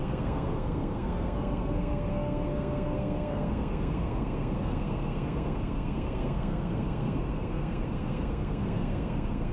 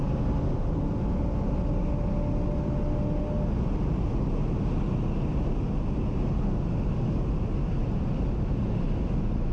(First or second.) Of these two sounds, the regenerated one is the first